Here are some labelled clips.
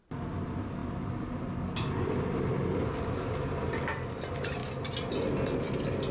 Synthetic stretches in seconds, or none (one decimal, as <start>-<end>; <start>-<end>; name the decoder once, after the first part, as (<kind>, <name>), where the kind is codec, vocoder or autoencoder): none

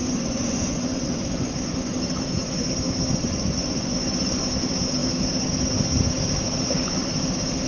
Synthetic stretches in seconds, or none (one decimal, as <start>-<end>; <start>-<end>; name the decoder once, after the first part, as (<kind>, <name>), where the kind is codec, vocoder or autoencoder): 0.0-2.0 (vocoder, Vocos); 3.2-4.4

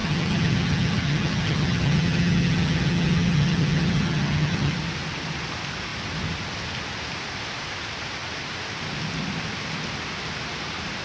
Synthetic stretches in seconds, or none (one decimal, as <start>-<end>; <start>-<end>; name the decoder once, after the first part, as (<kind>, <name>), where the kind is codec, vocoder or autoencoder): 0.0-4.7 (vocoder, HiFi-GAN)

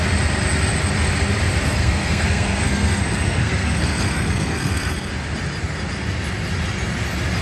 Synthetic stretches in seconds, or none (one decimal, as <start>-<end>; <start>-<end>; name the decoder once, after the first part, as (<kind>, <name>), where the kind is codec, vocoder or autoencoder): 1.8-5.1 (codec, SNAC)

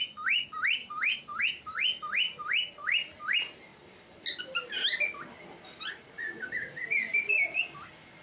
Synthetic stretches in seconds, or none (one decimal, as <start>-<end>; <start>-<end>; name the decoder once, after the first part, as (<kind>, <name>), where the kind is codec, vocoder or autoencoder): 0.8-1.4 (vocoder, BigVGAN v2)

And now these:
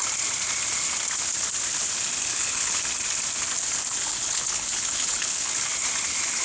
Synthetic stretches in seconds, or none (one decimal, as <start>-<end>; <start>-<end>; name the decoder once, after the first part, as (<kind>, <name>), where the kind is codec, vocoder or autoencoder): 2.3-2.8 (codec, HILCodec); 4.1-5.5

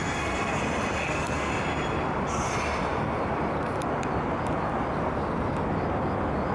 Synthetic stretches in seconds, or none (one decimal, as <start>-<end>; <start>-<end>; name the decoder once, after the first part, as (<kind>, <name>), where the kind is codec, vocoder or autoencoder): 0.0-0.6 (codec, SNAC); 1.0-1.5